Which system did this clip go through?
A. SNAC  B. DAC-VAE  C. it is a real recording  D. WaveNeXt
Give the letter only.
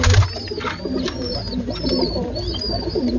C